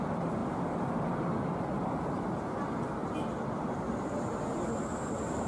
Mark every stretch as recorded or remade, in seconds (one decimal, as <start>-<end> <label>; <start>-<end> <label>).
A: 0.0-5.5 recorded